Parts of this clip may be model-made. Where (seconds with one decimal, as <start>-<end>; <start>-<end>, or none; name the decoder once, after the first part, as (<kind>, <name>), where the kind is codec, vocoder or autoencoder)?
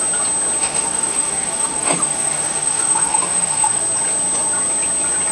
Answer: 0.6-3.8 (autoencoder, DAC-VAE)